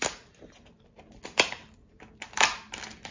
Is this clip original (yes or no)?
yes